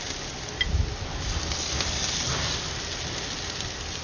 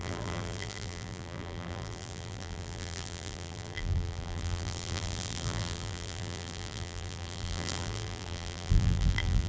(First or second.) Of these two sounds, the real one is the first